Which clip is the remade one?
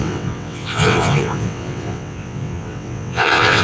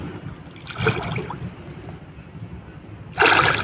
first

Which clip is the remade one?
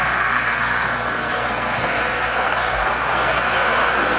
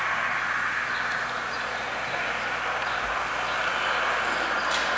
first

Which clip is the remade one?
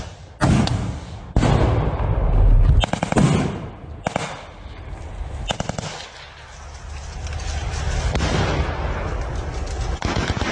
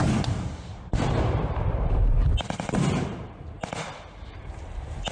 second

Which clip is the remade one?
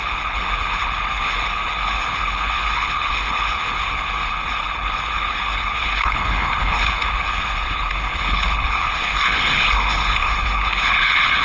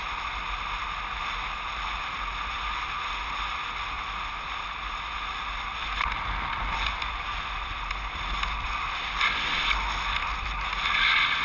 first